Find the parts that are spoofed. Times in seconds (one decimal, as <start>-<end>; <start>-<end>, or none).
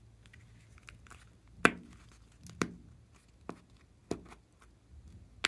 none